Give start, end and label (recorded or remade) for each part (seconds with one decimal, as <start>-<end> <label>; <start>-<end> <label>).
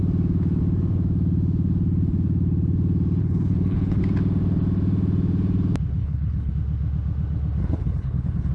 0.0-3.2 recorded; 3.2-4.0 remade; 4.0-6.0 recorded; 6.0-6.5 remade; 6.5-7.6 recorded; 7.6-8.5 remade